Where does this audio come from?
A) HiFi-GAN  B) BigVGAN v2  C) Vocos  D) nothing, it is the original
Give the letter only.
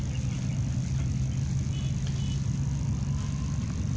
D